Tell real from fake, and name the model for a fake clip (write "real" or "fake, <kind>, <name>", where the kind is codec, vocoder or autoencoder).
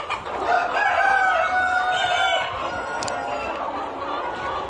real